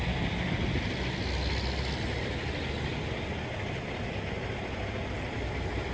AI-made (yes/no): no